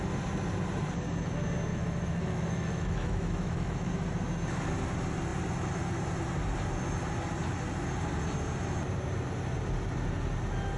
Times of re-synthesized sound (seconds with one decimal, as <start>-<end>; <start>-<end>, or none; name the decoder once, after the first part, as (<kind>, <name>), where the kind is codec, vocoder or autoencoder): 1.7-3.9 (autoencoder, DAC-VAE)